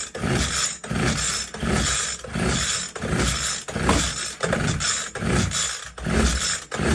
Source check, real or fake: real